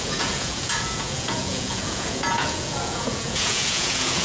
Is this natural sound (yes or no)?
no